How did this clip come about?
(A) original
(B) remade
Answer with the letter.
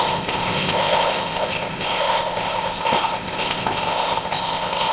B